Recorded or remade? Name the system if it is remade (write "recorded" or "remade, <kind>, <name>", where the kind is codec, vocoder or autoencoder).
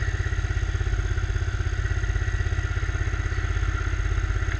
recorded